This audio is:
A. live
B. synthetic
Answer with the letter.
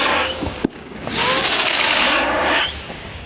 B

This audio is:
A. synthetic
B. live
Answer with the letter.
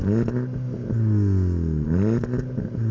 B